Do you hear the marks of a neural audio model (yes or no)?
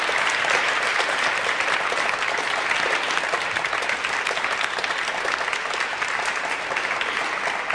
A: no